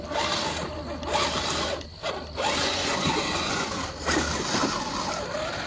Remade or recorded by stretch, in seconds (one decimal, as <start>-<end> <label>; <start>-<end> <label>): 0.0-2.6 recorded; 2.6-3.8 remade; 3.8-5.7 recorded